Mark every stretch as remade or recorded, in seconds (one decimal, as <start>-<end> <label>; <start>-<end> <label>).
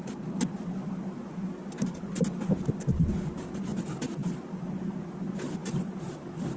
0.0-5.6 recorded; 5.6-6.6 remade